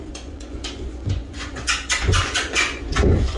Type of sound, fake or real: fake